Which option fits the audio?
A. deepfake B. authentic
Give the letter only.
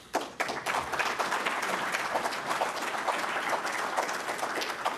B